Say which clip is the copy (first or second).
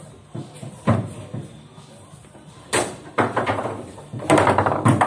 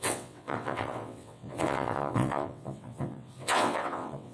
second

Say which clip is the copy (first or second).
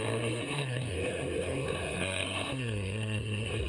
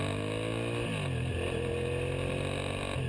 first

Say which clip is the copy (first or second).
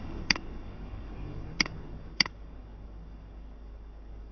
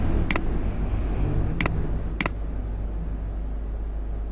first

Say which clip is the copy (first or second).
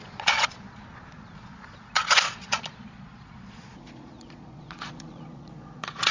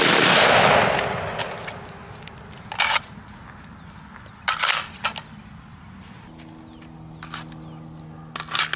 first